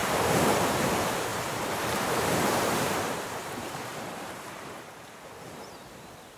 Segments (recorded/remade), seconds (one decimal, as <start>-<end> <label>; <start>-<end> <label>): 0.0-0.9 remade; 0.9-1.3 recorded; 1.3-5.1 remade; 5.1-6.4 recorded